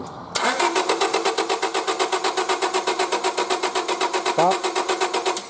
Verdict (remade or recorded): recorded